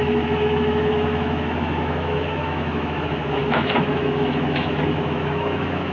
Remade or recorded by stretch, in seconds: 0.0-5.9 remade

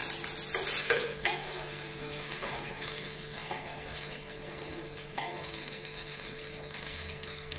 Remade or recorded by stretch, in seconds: 0.0-0.8 recorded; 0.8-7.6 remade

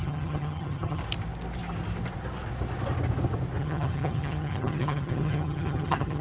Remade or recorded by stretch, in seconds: 0.0-1.0 remade; 1.0-3.6 recorded; 3.6-6.2 remade

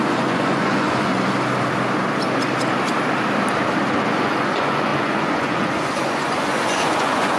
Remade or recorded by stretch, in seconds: 0.0-1.1 remade; 1.1-4.0 recorded; 4.0-7.4 remade